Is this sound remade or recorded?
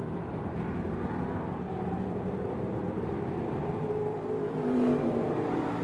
remade